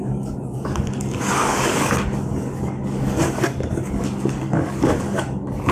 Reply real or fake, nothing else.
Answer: fake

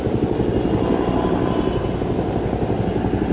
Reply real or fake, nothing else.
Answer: real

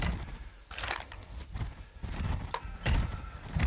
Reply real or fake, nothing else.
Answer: real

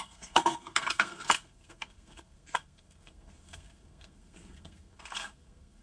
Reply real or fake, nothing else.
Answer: fake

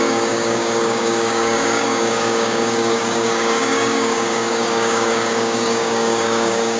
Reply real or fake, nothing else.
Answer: fake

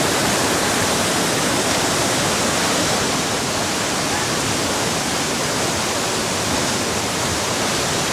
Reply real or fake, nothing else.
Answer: real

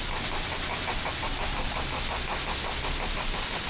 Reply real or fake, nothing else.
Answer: real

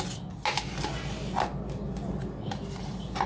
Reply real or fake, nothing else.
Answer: real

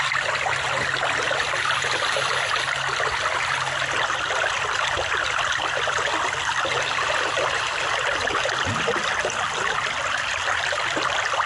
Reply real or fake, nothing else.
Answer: real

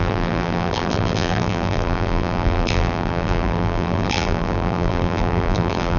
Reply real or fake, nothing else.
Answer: fake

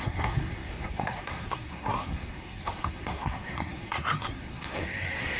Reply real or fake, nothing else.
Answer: fake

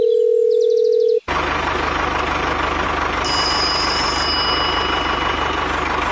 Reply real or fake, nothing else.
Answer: real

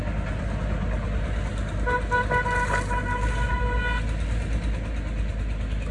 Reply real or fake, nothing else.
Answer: real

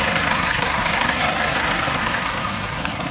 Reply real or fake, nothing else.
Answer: fake